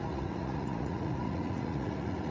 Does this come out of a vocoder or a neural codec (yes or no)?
yes